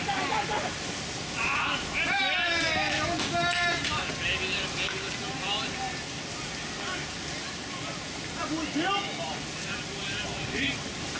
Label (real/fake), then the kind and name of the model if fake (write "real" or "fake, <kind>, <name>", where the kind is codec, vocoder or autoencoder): real